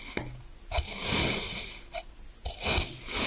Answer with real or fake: real